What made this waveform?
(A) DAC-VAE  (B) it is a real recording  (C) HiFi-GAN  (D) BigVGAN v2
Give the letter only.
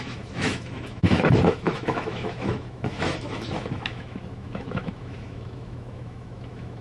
A